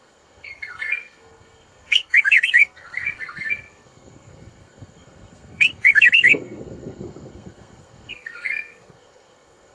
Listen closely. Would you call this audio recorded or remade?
remade